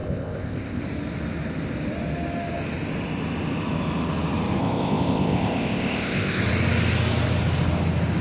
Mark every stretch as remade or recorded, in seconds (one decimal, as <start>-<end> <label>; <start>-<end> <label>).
0.0-0.8 remade; 0.8-4.6 recorded; 4.6-6.4 remade; 6.4-8.2 recorded